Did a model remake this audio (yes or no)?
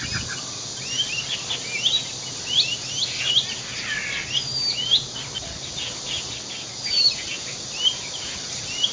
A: no